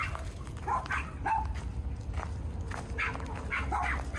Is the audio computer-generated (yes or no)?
no